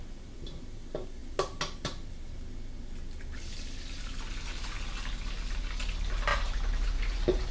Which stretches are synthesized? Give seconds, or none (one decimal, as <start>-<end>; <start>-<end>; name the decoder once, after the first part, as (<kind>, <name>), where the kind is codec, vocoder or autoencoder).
6.3-7.5 (vocoder, BigVGAN v2)